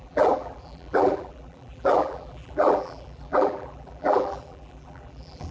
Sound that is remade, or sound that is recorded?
remade